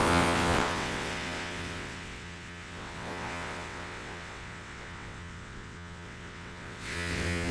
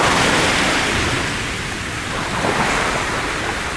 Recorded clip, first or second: second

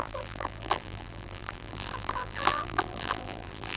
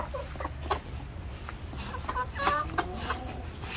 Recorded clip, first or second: second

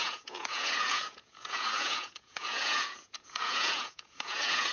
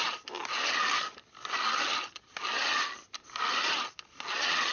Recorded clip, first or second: second